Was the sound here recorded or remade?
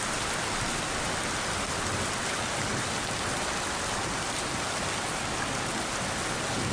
recorded